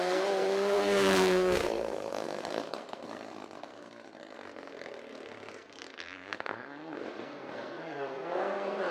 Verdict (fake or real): fake